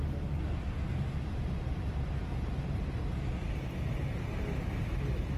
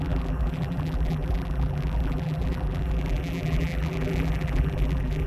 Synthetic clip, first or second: second